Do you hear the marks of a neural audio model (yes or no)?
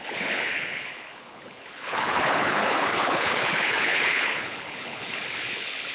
yes